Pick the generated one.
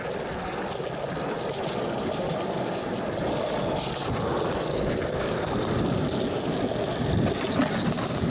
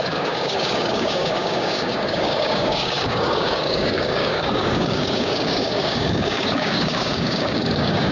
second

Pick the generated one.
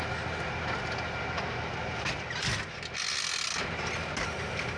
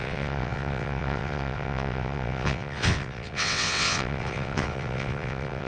second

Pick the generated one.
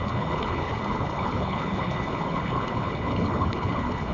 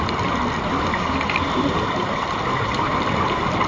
first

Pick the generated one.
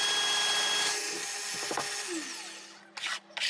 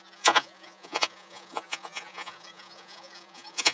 second